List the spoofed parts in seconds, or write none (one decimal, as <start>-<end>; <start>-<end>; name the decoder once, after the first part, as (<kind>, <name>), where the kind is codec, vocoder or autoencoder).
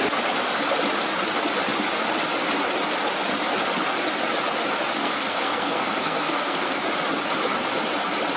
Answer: 5.0-6.8 (codec, SNAC)